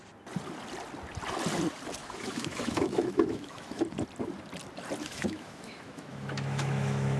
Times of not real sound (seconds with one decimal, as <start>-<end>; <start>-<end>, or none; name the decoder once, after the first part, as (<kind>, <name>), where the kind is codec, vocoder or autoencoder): 2.0-3.8 (autoencoder, DAC-VAE); 5.0-7.2